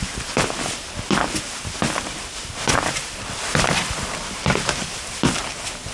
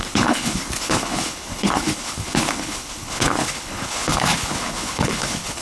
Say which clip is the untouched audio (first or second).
first